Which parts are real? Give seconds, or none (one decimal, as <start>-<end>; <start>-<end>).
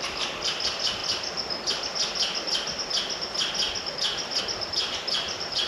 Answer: 1.0-4.4